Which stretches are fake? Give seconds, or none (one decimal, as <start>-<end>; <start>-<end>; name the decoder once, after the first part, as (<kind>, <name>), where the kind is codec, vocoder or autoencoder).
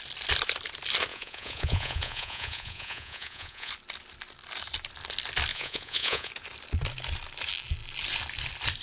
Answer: 1.1-3.7 (vocoder, Vocos); 5.5-6.3